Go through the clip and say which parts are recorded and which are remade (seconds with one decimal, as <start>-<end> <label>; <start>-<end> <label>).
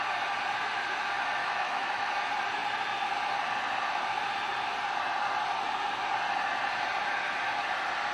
0.0-1.4 recorded; 1.4-2.1 remade; 2.1-8.1 recorded